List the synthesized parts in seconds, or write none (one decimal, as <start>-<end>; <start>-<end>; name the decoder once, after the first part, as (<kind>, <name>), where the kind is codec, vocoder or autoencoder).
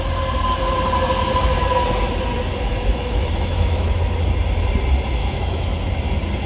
2.5-3.9 (autoencoder, DAC-VAE); 5.2-5.9